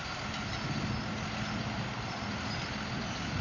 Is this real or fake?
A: real